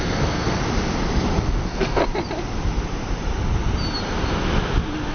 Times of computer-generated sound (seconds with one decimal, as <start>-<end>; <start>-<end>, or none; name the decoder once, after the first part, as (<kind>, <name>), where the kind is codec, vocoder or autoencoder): 0.0-0.6 (codec, SNAC); 1.4-2.0